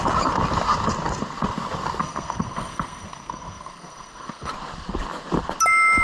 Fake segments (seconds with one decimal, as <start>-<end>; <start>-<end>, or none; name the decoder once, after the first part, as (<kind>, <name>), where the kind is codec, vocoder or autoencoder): 2.0-4.5 (codec, SNAC)